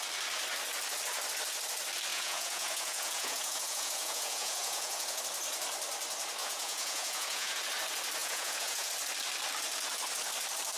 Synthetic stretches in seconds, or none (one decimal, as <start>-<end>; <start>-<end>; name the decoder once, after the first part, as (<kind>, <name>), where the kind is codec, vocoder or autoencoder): 2.1-5.2 (vocoder, Vocos); 6.4-7.6; 8.2-8.9